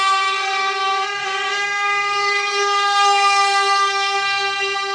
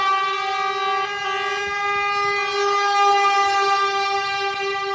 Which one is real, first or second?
second